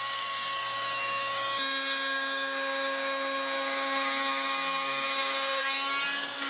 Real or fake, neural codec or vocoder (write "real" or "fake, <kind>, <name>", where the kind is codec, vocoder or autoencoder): fake, codec, DAC